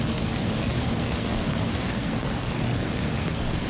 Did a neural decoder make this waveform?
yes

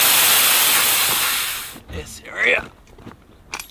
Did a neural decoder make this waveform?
no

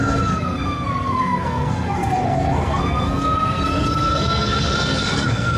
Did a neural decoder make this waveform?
yes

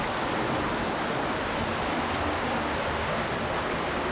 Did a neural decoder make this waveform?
no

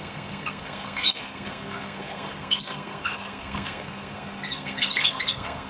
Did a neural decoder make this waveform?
yes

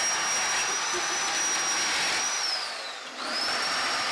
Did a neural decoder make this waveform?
no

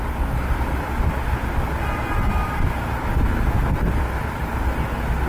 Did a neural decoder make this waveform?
no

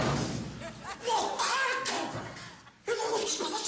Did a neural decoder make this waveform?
no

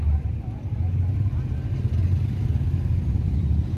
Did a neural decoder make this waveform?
no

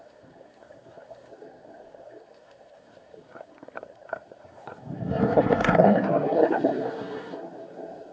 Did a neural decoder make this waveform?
yes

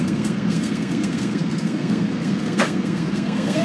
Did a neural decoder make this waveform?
yes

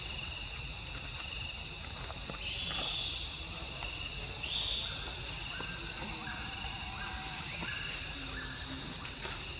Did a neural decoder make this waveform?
no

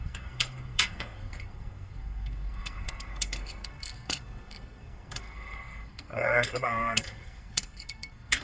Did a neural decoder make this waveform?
yes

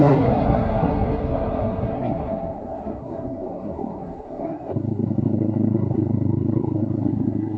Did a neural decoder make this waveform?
yes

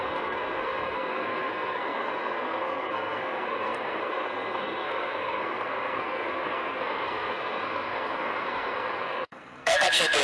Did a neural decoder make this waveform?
yes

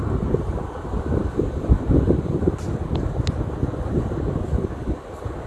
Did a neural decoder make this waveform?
no